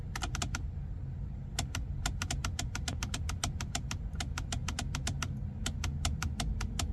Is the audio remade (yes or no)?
no